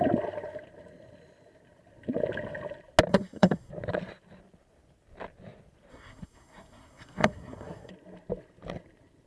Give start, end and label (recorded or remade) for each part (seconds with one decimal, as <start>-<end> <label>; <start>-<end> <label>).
0.0-3.1 recorded; 3.1-3.7 remade; 3.7-5.9 recorded; 5.9-7.9 remade; 7.9-9.3 recorded

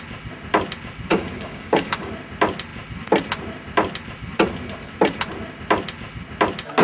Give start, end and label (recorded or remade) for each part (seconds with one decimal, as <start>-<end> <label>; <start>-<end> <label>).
0.0-1.1 recorded; 1.1-2.1 remade; 2.1-6.8 recorded

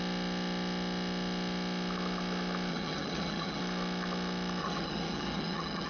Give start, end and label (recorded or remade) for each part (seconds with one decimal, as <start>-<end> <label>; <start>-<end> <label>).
0.0-2.7 recorded; 2.7-3.6 remade; 3.6-4.6 recorded; 4.6-5.9 remade

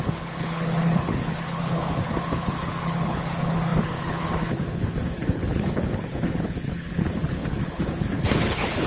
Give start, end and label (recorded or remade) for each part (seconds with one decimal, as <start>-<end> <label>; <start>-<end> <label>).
0.0-8.9 remade

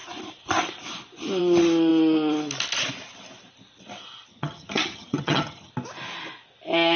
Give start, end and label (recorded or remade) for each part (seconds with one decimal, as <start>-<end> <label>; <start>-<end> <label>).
0.0-4.3 recorded; 4.3-5.7 remade; 5.7-7.0 recorded

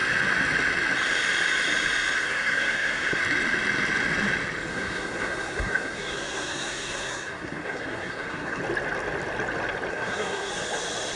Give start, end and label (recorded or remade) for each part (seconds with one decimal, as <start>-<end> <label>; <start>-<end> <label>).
0.0-2.2 recorded; 2.2-3.2 remade; 3.2-4.7 recorded; 4.7-8.6 remade; 8.6-9.9 recorded; 9.9-10.5 remade; 10.5-11.2 recorded